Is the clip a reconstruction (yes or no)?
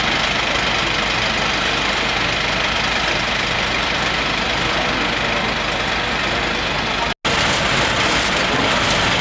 no